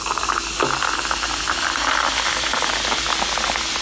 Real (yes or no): yes